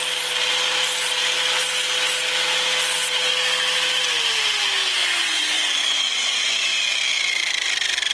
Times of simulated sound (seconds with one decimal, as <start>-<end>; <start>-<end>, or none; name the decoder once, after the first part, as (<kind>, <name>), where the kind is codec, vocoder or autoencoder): 5.0-6.8 (vocoder, Vocos)